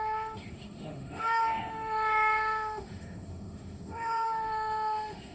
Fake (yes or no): yes